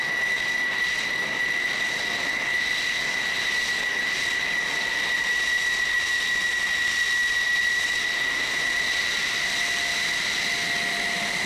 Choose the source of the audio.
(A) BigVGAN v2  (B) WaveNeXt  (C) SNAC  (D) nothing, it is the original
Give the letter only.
D